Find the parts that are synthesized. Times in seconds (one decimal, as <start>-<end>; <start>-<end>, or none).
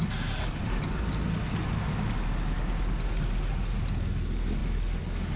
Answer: none